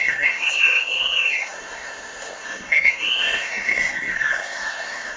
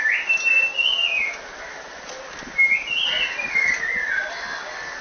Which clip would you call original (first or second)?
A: second